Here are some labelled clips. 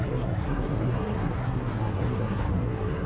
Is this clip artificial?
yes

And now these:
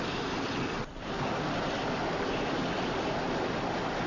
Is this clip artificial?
no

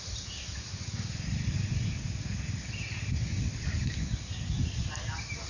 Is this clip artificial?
no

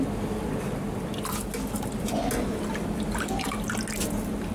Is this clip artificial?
no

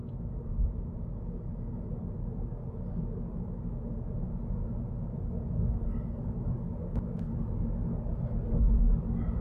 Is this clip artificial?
no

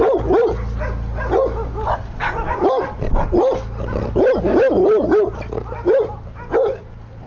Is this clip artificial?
no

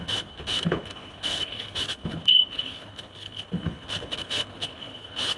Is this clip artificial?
yes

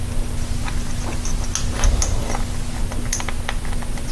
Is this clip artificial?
no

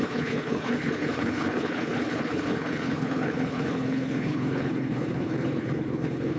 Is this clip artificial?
yes